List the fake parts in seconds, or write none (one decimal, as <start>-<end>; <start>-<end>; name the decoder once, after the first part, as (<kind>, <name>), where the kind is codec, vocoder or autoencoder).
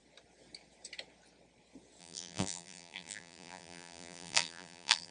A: 2.0-5.1 (vocoder, BigVGAN v2)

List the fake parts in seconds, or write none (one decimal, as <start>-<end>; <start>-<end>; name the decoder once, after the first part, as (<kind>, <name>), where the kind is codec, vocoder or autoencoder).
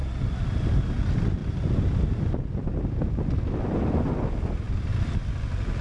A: 4.9-5.8 (vocoder, BigVGAN v2)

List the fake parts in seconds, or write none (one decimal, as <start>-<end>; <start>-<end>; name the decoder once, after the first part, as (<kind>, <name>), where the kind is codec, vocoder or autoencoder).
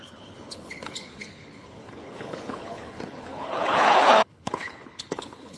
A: 0.0-5.6 (codec, HILCodec)